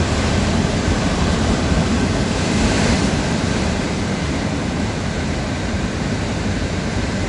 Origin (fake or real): fake